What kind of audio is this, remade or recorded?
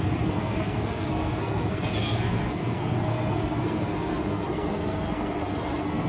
remade